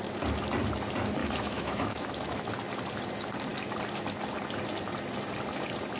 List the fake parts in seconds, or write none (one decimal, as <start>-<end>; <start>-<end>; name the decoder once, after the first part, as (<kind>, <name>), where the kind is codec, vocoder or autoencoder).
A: 1.2-2.5 (autoencoder, DAC-VAE)